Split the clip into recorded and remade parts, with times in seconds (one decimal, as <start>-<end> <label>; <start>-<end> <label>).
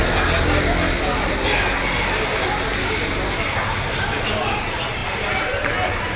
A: 0.0-6.2 recorded